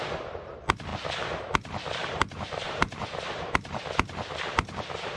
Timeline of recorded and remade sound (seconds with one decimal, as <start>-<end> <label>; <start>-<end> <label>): 0.0-2.0 recorded; 2.0-3.8 remade; 3.8-5.2 recorded